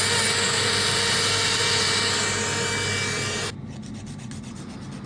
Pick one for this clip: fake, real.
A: real